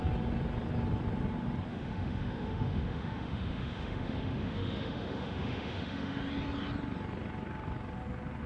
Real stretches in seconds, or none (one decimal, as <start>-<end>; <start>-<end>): 0.0-1.7; 6.2-8.5